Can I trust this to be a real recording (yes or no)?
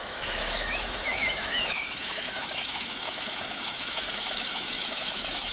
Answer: no